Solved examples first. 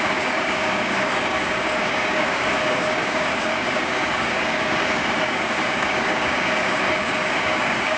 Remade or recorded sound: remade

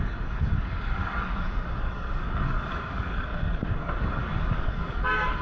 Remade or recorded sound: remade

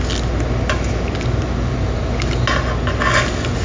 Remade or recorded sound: recorded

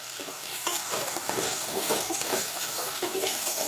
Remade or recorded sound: remade